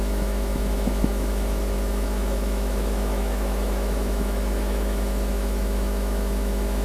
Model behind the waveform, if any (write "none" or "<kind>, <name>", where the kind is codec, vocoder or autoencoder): autoencoder, DAC-VAE